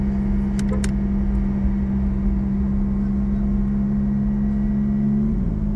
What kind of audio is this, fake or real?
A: real